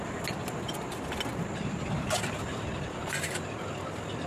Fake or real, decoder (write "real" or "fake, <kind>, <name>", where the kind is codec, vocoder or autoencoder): real